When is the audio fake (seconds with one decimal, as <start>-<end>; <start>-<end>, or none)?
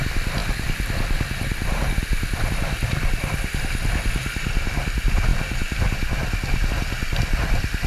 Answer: none